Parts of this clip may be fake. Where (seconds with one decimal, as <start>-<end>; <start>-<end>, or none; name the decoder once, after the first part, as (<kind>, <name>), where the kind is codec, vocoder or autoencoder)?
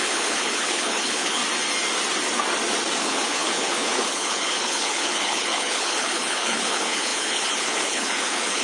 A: 0.0-1.4 (codec, HILCodec); 3.0-8.6